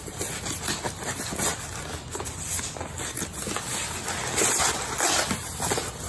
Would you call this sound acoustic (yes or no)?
yes